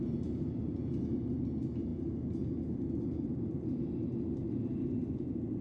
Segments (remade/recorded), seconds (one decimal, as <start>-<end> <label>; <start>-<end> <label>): 0.0-5.6 recorded